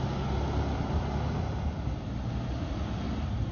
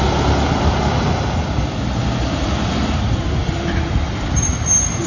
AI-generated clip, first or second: second